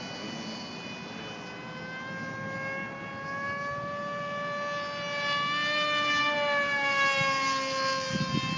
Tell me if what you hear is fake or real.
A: real